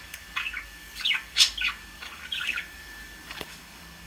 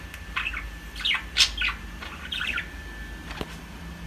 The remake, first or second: first